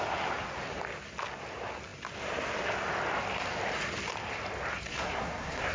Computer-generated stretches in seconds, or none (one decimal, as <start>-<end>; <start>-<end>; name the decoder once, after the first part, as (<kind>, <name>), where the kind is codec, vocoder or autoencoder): 4.9-5.7 (codec, SNAC)